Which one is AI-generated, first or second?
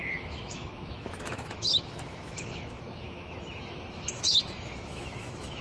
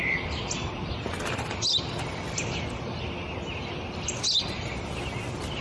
first